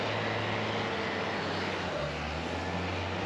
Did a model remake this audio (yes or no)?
no